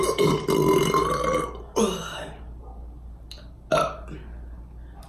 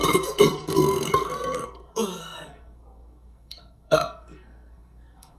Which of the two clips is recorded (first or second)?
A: first